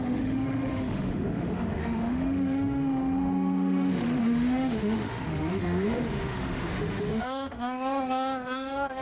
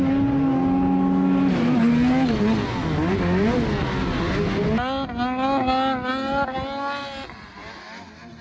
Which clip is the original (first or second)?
second